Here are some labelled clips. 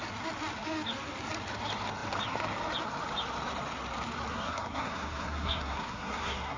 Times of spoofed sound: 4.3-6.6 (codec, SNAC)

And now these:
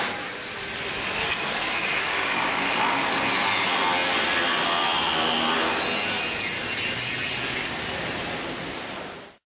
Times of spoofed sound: 1.2-2.0 (codec, SNAC)